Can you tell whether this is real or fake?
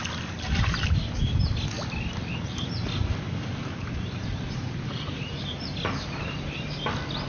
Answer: real